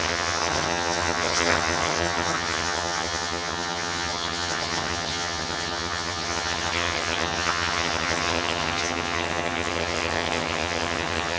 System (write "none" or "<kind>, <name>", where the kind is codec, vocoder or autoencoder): vocoder, HiFi-GAN